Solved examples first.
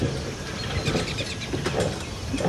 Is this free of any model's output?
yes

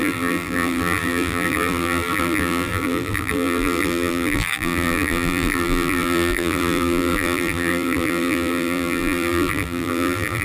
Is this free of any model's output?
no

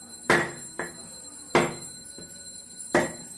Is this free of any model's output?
yes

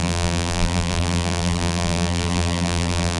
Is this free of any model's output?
no